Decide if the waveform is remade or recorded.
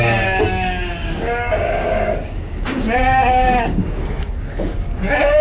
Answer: remade